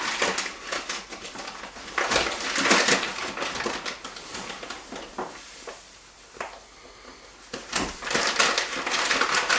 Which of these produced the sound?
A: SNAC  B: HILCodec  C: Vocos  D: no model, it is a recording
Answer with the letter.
D